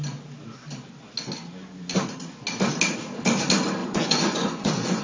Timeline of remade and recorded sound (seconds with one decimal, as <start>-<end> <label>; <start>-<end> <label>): 0.0-3.8 recorded; 3.8-5.0 remade